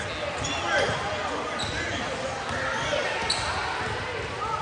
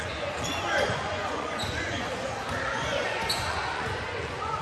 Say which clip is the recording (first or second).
first